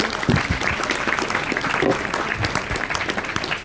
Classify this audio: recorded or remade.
recorded